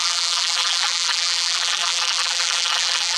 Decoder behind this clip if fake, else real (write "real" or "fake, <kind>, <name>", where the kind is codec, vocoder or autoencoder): fake, vocoder, BigVGAN v2